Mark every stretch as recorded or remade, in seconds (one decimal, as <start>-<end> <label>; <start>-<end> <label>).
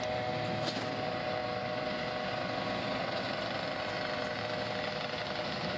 0.0-5.8 recorded